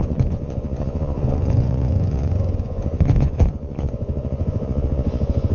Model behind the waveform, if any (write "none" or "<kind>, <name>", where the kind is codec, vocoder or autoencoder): vocoder, Vocos